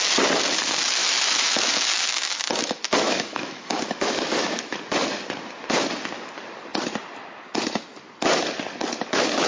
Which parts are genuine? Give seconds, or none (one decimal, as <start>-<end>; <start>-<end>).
0.0-1.0; 4.8-9.5

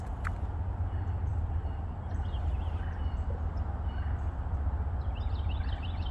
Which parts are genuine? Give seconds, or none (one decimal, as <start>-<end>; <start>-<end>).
0.0-6.1

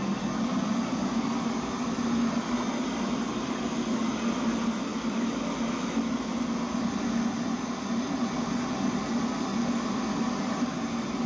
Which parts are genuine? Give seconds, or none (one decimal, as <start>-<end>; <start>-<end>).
0.0-4.9; 6.3-11.3

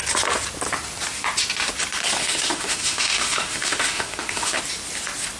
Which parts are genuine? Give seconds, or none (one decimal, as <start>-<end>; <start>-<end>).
0.0-2.2; 4.6-5.4

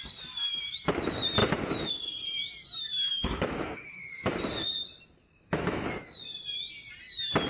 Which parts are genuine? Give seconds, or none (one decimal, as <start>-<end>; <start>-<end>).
0.0-3.1; 4.3-5.2; 6.1-7.5